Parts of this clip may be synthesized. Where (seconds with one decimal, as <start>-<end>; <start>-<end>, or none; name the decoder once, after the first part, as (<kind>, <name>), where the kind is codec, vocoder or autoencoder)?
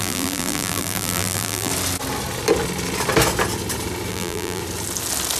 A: 0.0-1.7 (vocoder, BigVGAN v2); 4.1-4.6